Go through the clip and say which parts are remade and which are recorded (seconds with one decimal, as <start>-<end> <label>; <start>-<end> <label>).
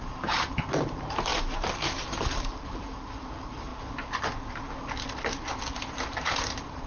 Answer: 0.0-3.7 remade; 3.7-6.0 recorded; 6.0-6.9 remade